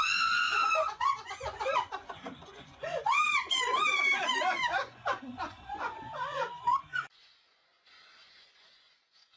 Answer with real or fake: fake